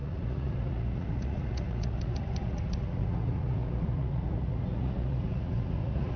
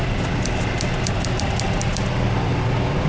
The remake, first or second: first